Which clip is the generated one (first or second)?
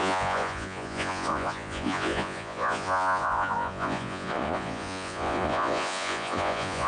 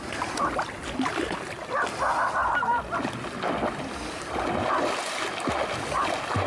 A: first